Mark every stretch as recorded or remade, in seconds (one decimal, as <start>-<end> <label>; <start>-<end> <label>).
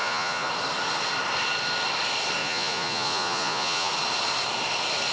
0.0-0.5 remade; 0.5-2.4 recorded; 2.4-3.9 remade; 3.9-5.1 recorded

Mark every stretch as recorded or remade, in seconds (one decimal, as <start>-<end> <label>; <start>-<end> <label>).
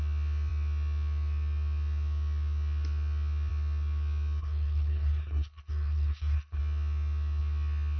0.0-4.4 recorded; 4.4-6.6 remade; 6.6-8.0 recorded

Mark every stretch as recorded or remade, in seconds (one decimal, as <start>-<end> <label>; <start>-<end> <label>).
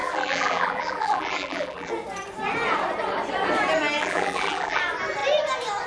0.0-1.9 remade; 1.9-4.0 recorded; 4.0-4.8 remade; 4.8-5.9 recorded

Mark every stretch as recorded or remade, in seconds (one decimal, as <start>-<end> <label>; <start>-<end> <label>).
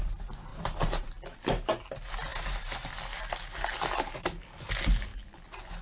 0.0-0.5 recorded; 0.5-1.1 remade; 1.1-5.8 recorded